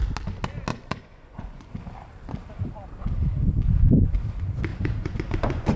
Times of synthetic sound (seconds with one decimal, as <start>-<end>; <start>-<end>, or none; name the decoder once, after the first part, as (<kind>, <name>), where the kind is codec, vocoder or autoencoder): 0.7-1.7 (vocoder, Vocos); 4.7-5.8